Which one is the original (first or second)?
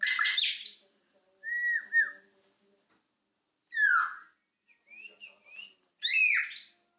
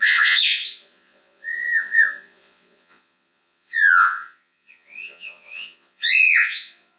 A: first